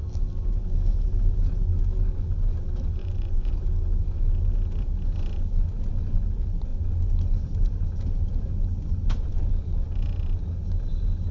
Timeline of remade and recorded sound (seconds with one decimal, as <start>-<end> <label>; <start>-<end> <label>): 0.0-3.0 recorded; 3.0-3.5 remade; 3.5-11.3 recorded